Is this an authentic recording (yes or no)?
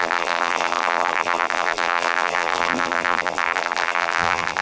no